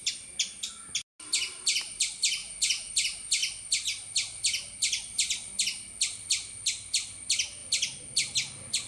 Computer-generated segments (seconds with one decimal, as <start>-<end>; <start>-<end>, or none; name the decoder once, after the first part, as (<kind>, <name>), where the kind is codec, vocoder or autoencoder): 2.4-2.9 (vocoder, Vocos)